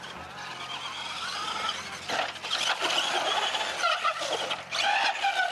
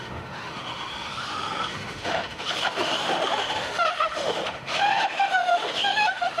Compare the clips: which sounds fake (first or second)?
second